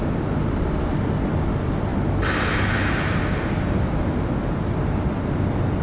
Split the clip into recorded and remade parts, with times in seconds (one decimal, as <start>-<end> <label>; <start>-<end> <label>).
0.0-5.8 recorded